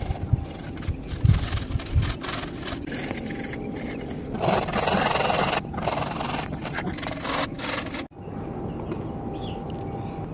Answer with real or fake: real